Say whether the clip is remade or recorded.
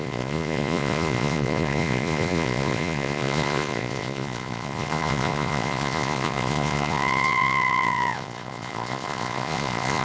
remade